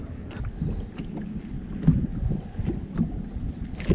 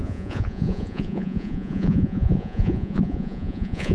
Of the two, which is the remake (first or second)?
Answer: second